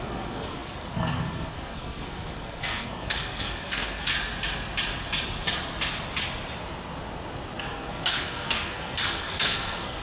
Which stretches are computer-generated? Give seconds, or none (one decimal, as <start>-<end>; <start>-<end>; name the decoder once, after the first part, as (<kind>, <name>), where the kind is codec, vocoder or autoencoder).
0.0-4.1 (codec, SNAC); 7.6-10.0